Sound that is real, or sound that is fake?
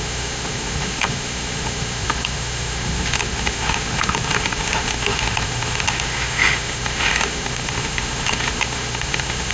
fake